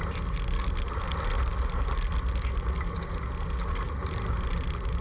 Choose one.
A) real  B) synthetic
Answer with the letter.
A